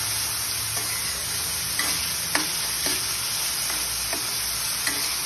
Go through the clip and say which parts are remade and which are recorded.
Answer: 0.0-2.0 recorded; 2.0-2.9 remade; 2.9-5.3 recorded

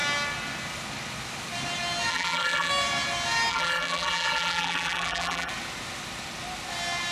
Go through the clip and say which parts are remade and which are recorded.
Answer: 0.0-2.1 recorded; 2.1-2.7 remade; 2.7-3.5 recorded; 3.5-5.5 remade; 5.5-7.1 recorded

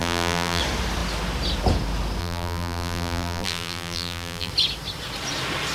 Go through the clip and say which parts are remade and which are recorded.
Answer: 0.0-0.6 remade; 0.6-2.2 recorded; 2.2-4.5 remade; 4.5-5.7 recorded

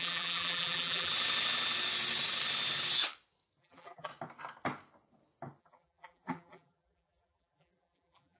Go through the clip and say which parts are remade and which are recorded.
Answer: 0.0-1.1 remade; 1.1-3.6 recorded; 3.6-4.1 remade; 4.1-5.6 recorded; 5.6-8.4 remade

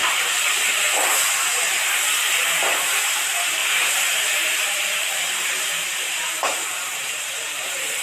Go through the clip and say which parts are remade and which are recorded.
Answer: 0.0-2.2 recorded; 2.2-8.0 remade

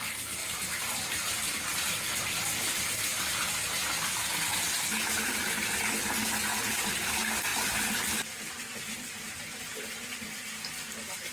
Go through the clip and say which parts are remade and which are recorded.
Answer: 0.0-0.4 recorded; 0.4-2.2 remade; 2.2-6.5 recorded; 6.5-7.1 remade; 7.1-7.5 recorded; 7.5-9.4 remade; 9.4-11.3 recorded